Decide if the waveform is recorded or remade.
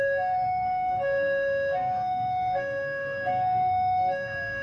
remade